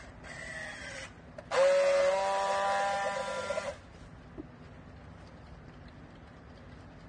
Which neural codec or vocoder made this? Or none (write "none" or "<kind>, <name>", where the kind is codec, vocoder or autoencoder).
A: none